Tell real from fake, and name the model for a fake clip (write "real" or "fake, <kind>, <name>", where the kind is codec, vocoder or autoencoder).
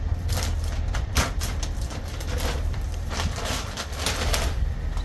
fake, vocoder, BigVGAN v2